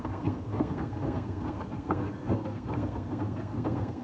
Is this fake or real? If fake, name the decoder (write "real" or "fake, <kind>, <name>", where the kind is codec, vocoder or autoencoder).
fake, codec, SNAC